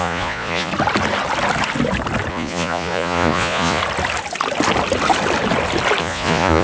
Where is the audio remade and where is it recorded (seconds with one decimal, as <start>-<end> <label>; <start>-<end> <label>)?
0.0-0.7 remade; 0.7-2.3 recorded; 2.3-3.8 remade; 3.8-6.0 recorded; 6.0-6.6 remade